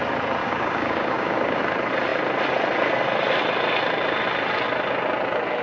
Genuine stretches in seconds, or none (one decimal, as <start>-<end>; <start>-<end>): 0.0-0.4; 1.6-5.6